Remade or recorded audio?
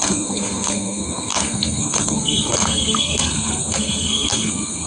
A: remade